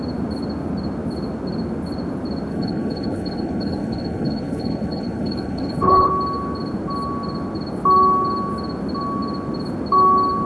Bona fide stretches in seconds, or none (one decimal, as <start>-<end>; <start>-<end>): 0.0-2.5; 6.1-10.5